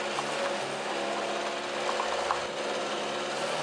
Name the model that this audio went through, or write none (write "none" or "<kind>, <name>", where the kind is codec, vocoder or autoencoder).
none